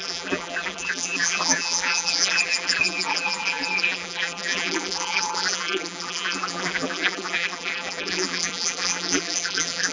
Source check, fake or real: fake